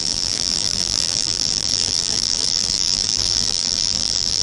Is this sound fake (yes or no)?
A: yes